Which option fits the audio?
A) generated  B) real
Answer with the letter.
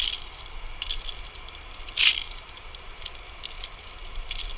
B